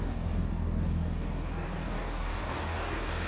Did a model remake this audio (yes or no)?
yes